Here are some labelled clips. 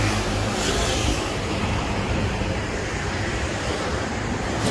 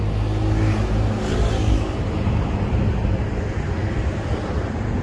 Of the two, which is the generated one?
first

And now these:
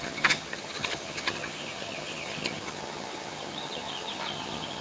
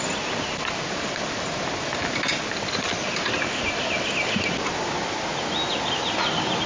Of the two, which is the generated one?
first